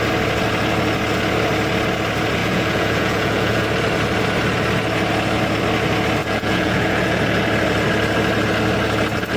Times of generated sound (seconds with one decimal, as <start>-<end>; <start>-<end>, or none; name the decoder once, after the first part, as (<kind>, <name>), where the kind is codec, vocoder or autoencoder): 2.4-3.6 (vocoder, Vocos); 6.2-7.2

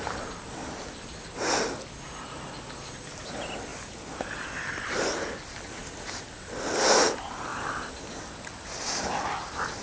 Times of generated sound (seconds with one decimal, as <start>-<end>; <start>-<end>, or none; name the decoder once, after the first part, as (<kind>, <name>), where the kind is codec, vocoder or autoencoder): none

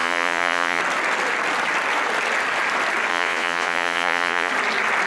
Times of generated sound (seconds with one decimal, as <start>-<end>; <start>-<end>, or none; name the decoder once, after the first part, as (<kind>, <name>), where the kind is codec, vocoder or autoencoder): 0.0-0.8 (vocoder, Vocos); 3.1-4.5

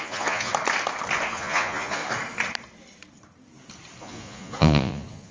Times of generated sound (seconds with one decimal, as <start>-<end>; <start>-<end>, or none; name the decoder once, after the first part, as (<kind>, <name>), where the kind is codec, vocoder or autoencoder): 0.0-0.5 (vocoder, Vocos); 1.3-2.0; 4.0-5.3

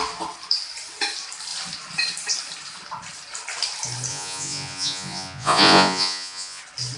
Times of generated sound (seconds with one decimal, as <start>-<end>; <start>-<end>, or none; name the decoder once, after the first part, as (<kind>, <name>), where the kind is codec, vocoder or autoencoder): 4.1-6.6 (vocoder, Vocos)

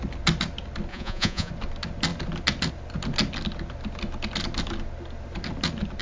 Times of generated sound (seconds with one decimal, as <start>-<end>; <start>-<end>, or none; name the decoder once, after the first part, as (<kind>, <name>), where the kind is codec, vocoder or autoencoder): 0.9-1.5 (vocoder, Vocos)